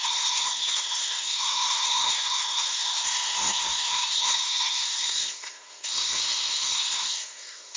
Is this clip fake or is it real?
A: fake